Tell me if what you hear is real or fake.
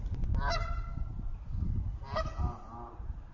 real